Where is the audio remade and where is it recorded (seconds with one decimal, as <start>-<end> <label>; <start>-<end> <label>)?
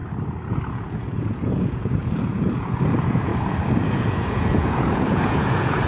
0.0-0.7 recorded; 0.7-3.3 remade; 3.3-3.8 recorded; 3.8-5.9 remade